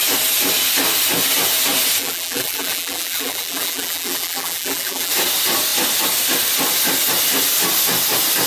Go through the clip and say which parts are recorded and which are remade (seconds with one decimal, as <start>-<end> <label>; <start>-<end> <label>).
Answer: 0.0-2.0 recorded; 2.0-5.1 remade; 5.1-8.5 recorded